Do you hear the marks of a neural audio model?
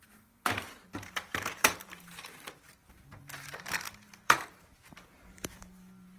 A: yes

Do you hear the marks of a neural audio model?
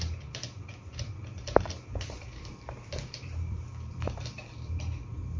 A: yes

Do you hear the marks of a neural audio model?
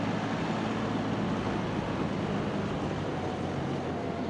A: no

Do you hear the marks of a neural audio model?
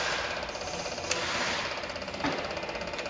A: no